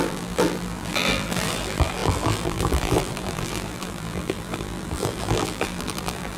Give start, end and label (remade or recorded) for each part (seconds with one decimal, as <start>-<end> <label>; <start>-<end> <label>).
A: 0.0-6.4 remade